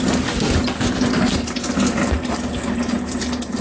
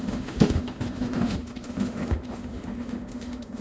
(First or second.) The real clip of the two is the first